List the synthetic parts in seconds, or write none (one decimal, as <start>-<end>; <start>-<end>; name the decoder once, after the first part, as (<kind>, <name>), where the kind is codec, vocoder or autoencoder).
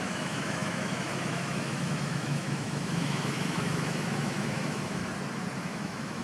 0.0-5.0 (autoencoder, DAC-VAE); 5.6-6.2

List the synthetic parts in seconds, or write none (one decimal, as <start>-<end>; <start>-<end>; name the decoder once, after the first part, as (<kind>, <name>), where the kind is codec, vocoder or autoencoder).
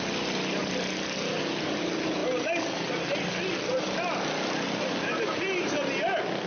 none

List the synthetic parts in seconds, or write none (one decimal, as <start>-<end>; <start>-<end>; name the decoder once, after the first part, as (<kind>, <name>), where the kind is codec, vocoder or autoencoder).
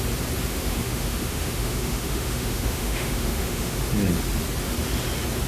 0.5-3.8 (autoencoder, DAC-VAE)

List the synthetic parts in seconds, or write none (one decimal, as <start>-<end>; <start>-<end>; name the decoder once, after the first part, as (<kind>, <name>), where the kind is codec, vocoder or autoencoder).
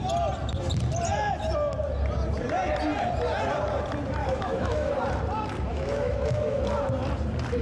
4.2-4.9 (autoencoder, DAC-VAE); 5.7-6.6